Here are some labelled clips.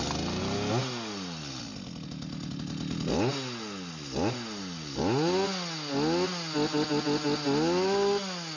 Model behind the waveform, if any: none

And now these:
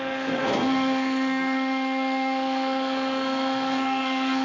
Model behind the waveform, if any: codec, SNAC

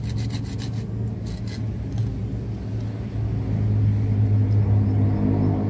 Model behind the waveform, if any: none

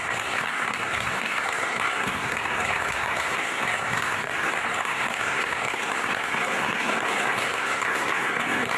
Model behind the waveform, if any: codec, SNAC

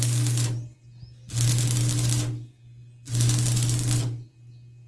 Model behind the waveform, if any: none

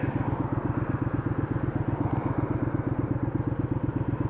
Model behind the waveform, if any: none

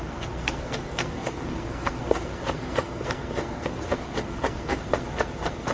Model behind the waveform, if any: codec, SNAC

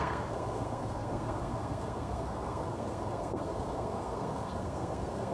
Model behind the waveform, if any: codec, SNAC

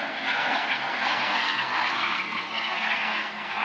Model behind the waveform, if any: codec, SNAC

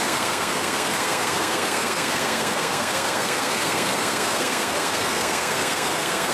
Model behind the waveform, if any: codec, SNAC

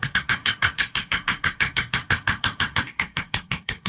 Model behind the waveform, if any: codec, SNAC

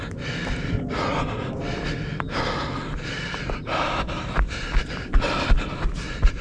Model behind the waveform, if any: none